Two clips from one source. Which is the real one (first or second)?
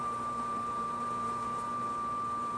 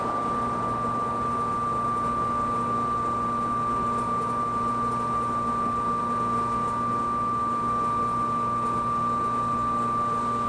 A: second